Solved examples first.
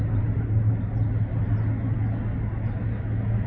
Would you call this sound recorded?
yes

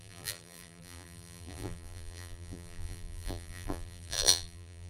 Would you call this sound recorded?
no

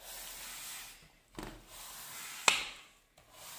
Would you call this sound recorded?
yes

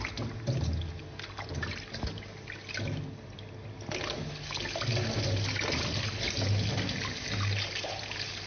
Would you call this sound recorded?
yes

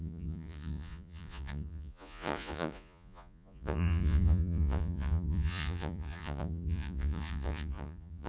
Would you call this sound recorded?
no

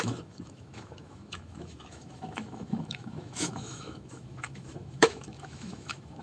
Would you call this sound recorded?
no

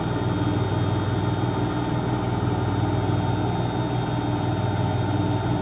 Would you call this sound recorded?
yes